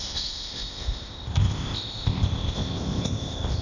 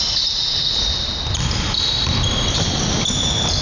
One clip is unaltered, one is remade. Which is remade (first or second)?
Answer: first